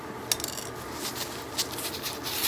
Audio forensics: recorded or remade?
recorded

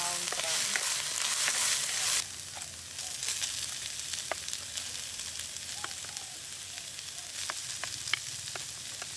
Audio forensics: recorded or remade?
recorded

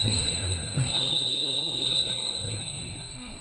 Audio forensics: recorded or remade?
remade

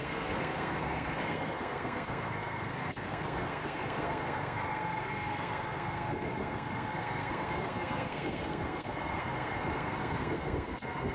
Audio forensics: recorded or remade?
remade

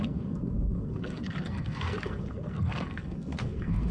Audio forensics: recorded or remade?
remade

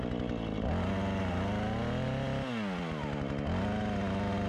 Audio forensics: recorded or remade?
recorded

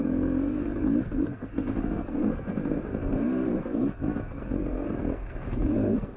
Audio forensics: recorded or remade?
remade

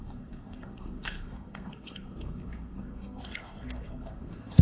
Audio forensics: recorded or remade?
remade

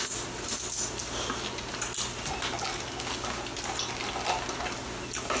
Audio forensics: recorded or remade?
recorded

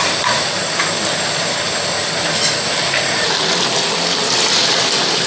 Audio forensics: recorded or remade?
recorded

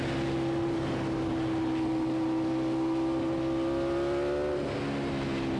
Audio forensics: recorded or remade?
recorded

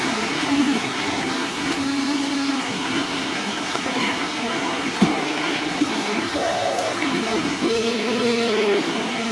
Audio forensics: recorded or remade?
remade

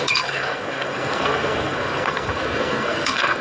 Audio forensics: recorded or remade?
remade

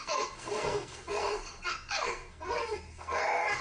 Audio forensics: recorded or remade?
remade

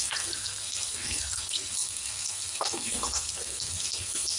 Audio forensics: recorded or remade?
remade